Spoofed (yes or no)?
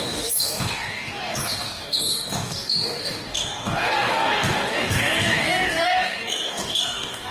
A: yes